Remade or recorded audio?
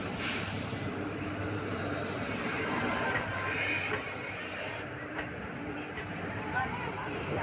remade